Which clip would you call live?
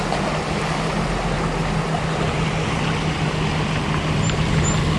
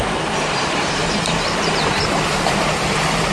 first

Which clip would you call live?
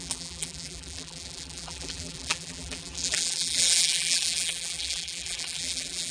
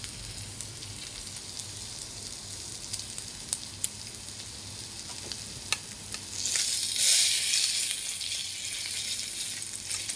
second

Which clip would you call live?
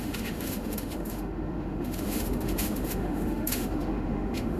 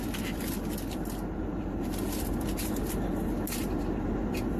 second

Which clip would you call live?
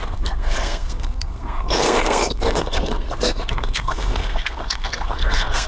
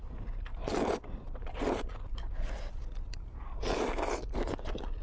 second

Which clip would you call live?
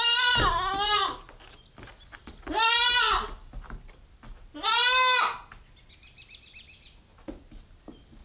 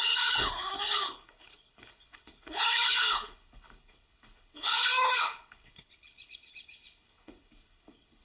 first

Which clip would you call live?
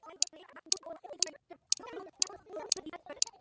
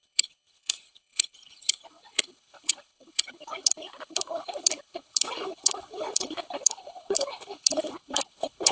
first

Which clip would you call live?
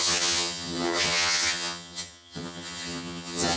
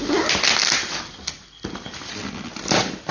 second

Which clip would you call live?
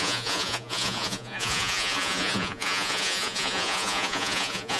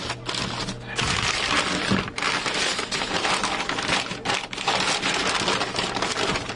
second